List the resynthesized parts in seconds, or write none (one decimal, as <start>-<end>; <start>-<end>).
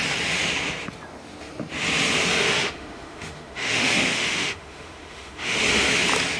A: 2.6-5.6